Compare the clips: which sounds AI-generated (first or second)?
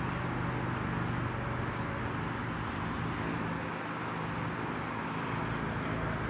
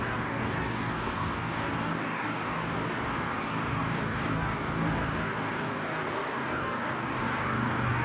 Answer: second